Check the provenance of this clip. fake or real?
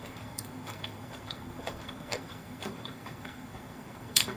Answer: fake